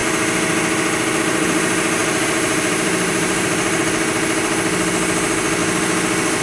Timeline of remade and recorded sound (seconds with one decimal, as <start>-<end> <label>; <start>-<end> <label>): 0.0-2.0 recorded; 2.0-3.8 remade; 3.8-6.4 recorded